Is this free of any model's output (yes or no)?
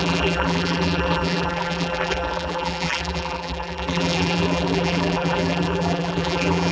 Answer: no